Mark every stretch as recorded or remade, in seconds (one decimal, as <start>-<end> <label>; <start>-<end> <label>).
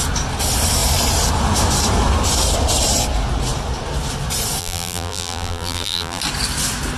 0.0-4.6 recorded; 4.6-6.2 remade; 6.2-7.0 recorded